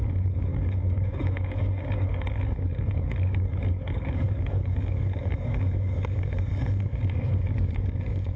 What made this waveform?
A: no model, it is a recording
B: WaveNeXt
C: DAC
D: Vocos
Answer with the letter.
C